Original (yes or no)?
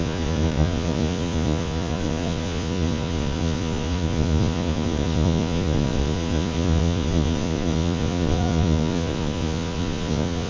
no